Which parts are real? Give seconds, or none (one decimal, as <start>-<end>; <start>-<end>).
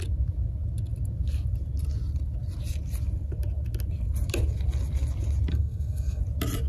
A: 0.0-5.5; 6.2-6.7